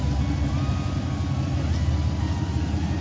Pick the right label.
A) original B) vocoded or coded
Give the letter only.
A